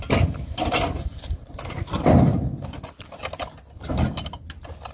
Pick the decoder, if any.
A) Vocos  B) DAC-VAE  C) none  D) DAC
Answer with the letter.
C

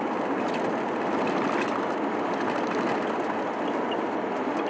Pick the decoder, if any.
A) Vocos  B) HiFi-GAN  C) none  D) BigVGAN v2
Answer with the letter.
C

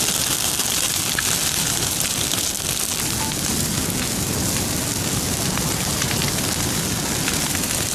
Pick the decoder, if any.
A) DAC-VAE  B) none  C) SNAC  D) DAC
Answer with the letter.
B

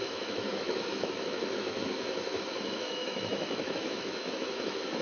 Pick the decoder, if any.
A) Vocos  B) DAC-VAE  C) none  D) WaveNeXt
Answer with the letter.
B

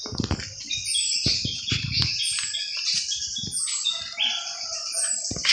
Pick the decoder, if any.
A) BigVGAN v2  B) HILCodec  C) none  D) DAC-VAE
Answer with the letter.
C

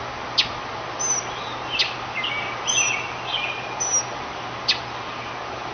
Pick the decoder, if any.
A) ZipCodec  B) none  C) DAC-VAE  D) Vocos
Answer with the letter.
B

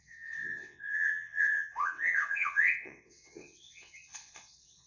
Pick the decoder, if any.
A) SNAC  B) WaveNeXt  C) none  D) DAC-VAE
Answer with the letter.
B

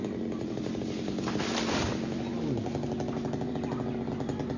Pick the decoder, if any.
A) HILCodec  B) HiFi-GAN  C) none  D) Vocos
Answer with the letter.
C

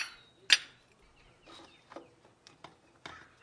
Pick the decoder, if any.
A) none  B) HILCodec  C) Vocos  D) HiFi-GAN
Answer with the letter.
A